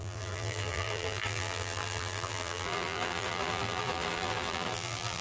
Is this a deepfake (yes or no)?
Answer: yes